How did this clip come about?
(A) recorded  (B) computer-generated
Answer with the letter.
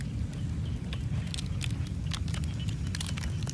A